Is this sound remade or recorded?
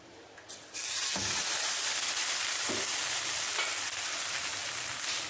recorded